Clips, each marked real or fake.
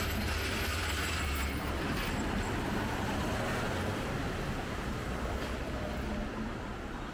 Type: real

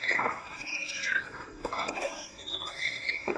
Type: fake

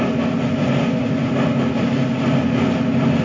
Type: real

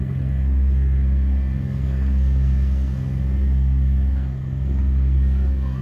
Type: fake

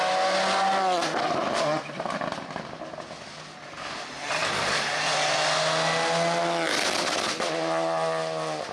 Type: real